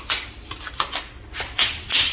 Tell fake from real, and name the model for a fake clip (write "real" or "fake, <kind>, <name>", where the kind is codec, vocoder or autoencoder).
real